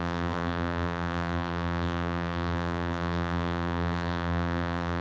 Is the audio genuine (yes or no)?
no